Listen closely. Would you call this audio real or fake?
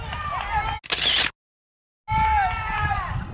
real